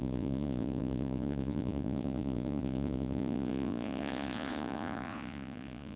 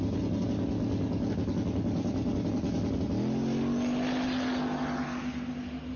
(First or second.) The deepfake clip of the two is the first